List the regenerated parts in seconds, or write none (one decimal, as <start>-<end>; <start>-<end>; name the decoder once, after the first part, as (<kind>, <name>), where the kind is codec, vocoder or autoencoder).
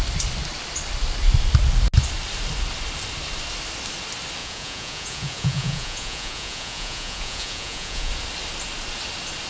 4.4-8.1 (vocoder, Vocos)